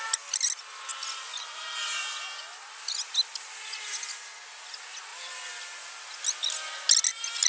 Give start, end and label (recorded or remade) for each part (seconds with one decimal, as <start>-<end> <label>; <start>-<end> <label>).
0.0-7.5 recorded